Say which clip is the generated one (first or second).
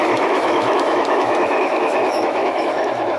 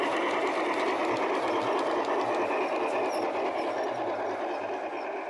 first